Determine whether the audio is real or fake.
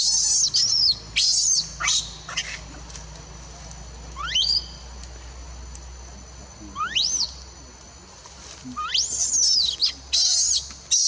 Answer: real